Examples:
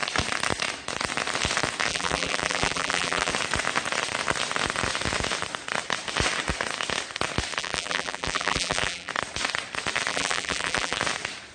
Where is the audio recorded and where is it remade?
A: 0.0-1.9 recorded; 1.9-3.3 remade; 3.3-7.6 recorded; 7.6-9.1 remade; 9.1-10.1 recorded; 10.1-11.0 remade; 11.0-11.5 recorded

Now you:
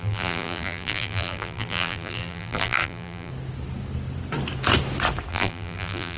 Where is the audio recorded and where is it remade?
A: 0.0-3.3 remade; 3.3-5.3 recorded; 5.3-6.2 remade

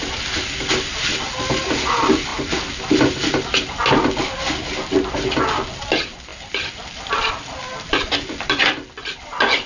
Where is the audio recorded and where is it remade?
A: 0.0-6.3 recorded; 6.3-8.6 remade; 8.6-9.7 recorded